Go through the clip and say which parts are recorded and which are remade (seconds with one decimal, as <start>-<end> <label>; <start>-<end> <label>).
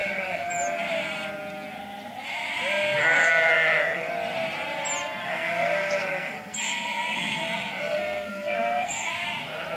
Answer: 0.0-0.5 remade; 0.5-3.0 recorded; 3.0-4.1 remade; 4.1-5.2 recorded; 5.2-9.1 remade; 9.1-9.8 recorded